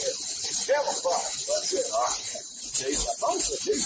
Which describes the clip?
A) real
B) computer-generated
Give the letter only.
A